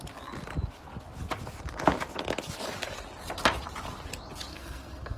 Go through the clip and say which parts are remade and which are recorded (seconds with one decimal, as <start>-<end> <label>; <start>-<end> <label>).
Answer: 0.0-4.5 recorded; 4.5-5.2 remade

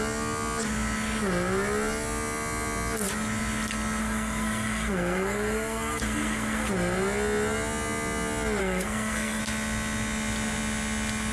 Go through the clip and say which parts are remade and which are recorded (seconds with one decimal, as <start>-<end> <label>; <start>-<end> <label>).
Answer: 0.0-4.0 recorded; 4.0-6.7 remade; 6.7-8.6 recorded; 8.6-9.4 remade; 9.4-11.3 recorded

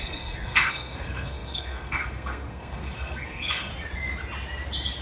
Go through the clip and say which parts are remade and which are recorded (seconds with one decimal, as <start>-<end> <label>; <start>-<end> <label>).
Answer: 0.0-3.7 remade; 3.7-5.0 recorded

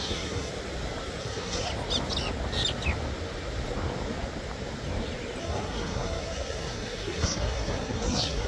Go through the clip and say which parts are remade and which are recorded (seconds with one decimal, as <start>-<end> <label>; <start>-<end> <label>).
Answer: 0.0-0.5 remade; 0.5-1.2 recorded; 1.2-1.7 remade; 1.7-5.4 recorded; 5.4-8.5 remade

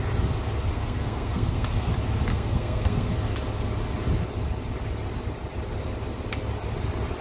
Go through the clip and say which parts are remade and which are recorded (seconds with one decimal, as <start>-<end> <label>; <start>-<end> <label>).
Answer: 0.0-0.7 recorded; 0.7-1.9 remade; 1.9-2.3 recorded; 2.3-3.1 remade; 3.1-7.2 recorded

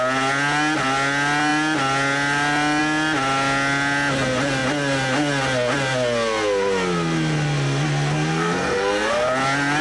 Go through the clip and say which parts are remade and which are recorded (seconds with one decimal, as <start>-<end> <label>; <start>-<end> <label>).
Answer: 0.0-8.3 recorded; 8.3-9.1 remade; 9.1-9.8 recorded